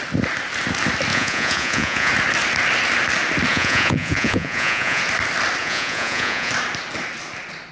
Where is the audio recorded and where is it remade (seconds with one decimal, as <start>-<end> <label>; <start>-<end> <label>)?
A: 0.0-1.1 recorded; 1.1-2.1 remade; 2.1-3.5 recorded; 3.5-5.0 remade; 5.0-5.6 recorded; 5.6-6.5 remade; 6.5-7.7 recorded